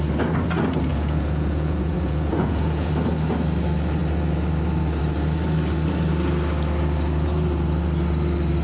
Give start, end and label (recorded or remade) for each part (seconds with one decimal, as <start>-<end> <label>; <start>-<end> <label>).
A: 0.0-0.9 recorded; 0.9-2.9 remade; 2.9-8.6 recorded